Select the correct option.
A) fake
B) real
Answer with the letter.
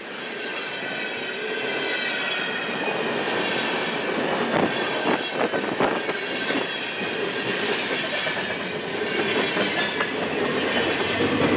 B